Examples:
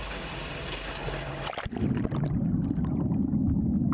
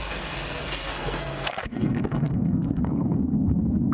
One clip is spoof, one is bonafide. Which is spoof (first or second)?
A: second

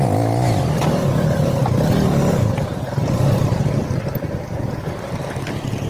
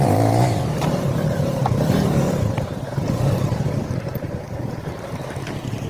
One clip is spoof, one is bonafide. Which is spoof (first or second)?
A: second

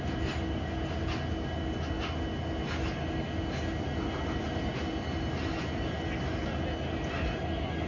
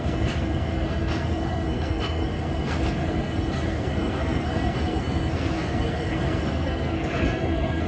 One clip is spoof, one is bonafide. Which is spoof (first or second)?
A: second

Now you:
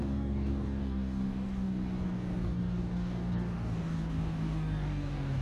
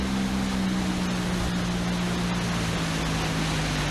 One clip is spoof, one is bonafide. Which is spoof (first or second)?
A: first